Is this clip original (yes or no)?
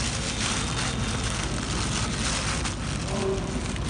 yes